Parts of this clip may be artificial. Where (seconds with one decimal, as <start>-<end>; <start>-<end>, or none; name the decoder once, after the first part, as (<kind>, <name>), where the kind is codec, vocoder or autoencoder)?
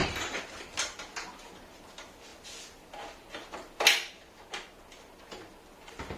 0.0-0.6 (vocoder, BigVGAN v2)